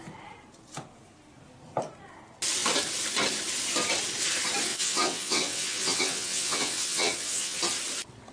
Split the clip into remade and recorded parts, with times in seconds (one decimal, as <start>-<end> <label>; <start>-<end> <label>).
0.0-4.7 recorded; 4.7-7.6 remade; 7.6-8.3 recorded